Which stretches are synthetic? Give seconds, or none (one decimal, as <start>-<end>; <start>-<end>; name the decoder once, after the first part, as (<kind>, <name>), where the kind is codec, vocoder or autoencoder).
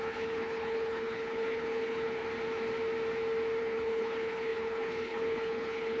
0.0-2.2 (codec, HILCodec); 3.6-6.0